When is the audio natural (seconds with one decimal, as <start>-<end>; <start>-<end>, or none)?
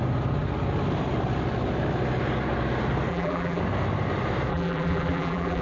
0.0-3.1; 3.6-4.5